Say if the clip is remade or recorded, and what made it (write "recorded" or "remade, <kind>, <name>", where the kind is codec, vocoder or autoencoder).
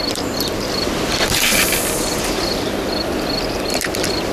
remade, vocoder, BigVGAN v2